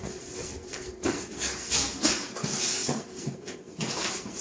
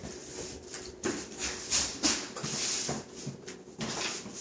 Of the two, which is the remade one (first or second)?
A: first